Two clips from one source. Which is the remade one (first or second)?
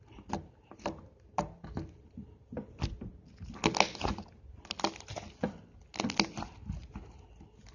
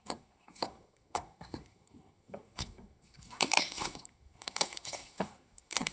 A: second